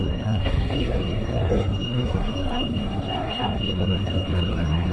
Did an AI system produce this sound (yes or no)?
yes